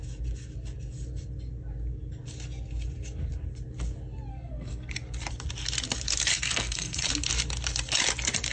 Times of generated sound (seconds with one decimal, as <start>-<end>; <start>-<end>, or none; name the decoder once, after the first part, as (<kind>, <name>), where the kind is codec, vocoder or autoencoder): 4.3-4.9 (codec, SNAC); 6.3-7.1